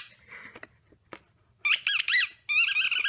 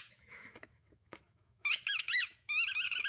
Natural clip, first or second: first